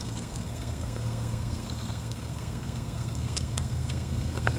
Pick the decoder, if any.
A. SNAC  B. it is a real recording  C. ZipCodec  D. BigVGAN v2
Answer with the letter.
A